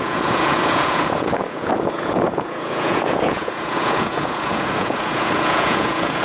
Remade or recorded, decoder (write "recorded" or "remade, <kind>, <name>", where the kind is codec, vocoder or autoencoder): remade, vocoder, Vocos